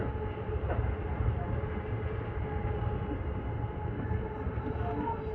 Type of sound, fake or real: real